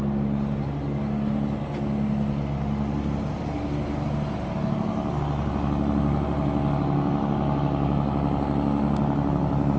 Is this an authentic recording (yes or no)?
yes